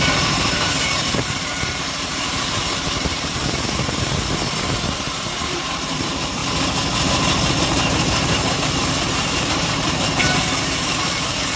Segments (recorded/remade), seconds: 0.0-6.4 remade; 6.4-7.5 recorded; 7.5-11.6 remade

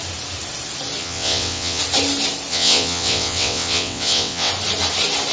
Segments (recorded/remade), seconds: 0.0-1.0 recorded; 1.0-1.8 remade; 1.8-2.5 recorded; 2.5-4.5 remade; 4.5-5.3 recorded

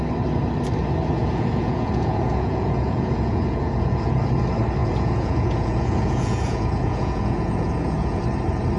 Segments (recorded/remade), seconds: 0.0-1.2 recorded; 1.2-4.2 remade; 4.2-4.8 recorded; 4.8-8.2 remade; 8.2-8.8 recorded

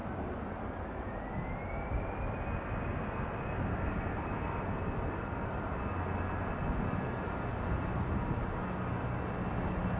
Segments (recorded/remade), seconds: 0.0-10.0 recorded

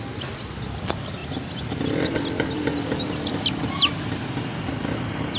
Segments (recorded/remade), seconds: 0.0-5.4 recorded